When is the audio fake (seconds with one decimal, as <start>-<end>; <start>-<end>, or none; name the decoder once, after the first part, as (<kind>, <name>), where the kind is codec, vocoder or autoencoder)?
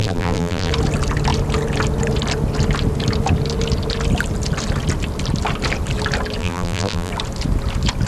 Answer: 0.0-0.7 (vocoder, BigVGAN v2); 6.4-7.1